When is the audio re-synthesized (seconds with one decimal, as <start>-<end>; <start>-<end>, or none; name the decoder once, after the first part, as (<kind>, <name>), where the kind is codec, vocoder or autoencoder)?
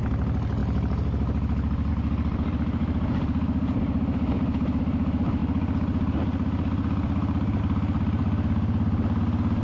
0.6-1.9 (vocoder, BigVGAN v2)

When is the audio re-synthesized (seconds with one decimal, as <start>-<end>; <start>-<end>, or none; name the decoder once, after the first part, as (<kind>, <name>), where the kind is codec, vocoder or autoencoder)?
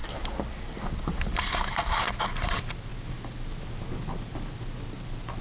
none